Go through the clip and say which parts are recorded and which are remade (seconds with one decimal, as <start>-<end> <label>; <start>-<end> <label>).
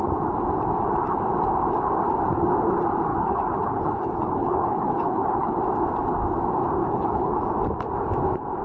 0.0-3.1 recorded; 3.1-5.6 remade; 5.6-6.8 recorded; 6.8-7.4 remade; 7.4-8.6 recorded